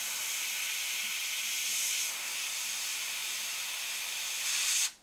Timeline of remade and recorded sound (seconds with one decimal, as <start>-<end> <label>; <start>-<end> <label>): 0.0-5.0 recorded